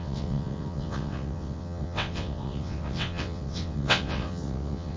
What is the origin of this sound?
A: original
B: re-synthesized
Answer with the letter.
B